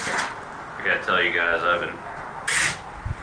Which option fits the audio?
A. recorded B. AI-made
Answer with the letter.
A